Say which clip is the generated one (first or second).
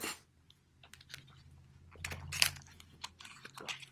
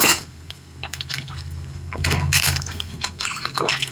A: second